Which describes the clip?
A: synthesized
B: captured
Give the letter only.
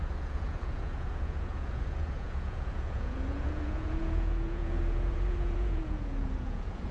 A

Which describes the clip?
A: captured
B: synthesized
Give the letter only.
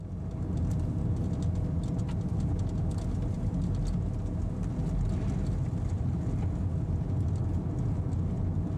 A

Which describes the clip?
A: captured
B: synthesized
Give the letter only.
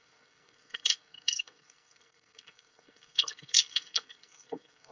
B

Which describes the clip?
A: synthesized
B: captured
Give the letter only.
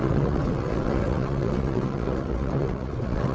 A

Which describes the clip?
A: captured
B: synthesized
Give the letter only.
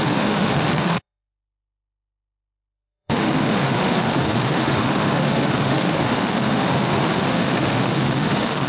B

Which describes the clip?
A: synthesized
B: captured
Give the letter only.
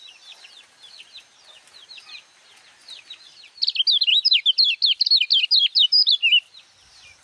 B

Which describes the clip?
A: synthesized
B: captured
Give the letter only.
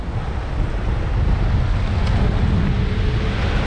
B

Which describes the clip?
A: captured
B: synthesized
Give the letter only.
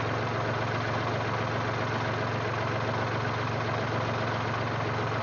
A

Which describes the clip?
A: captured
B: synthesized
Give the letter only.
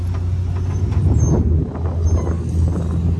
A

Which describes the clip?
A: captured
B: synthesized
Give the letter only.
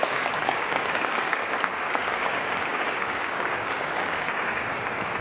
B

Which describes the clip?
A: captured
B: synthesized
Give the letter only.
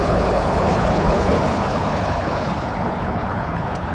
B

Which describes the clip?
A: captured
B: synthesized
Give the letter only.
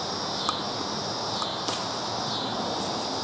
A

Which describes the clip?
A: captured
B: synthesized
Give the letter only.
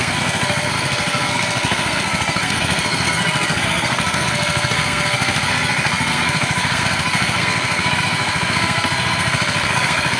B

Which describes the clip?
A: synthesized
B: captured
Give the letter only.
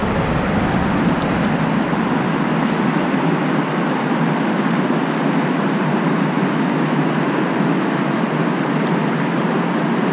B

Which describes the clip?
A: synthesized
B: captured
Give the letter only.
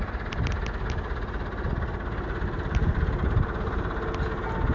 B